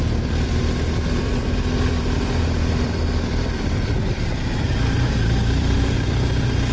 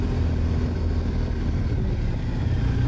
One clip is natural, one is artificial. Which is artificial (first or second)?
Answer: first